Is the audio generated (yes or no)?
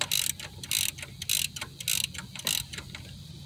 no